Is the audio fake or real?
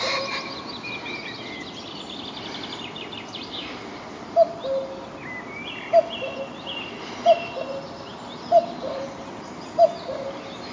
real